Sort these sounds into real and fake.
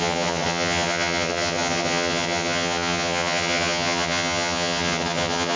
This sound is fake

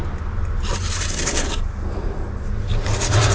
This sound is real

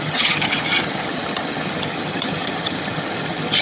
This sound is fake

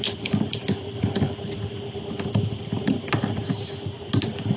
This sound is real